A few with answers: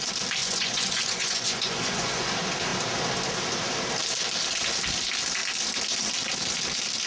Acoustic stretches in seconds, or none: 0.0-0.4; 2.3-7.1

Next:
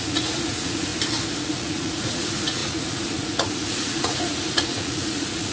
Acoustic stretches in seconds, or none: 0.9-1.4